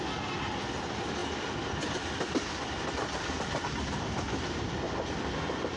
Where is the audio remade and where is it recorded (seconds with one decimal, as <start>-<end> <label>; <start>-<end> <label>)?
0.0-5.8 recorded